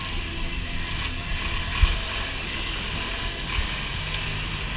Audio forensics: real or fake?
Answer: real